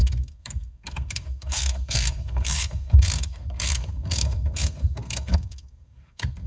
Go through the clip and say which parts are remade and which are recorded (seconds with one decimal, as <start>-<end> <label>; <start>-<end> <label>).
0.0-6.5 remade